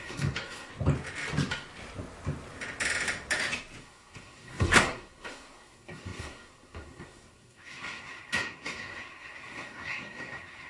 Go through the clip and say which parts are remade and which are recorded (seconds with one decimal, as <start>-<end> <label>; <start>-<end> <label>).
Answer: 0.0-0.7 remade; 0.7-3.8 recorded; 3.8-10.7 remade